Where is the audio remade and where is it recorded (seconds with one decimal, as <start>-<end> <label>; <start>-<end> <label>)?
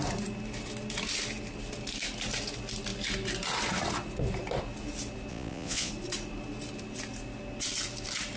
0.0-5.3 recorded; 5.3-5.9 remade; 5.9-8.4 recorded